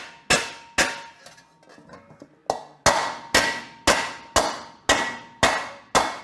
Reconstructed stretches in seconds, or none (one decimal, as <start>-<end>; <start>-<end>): none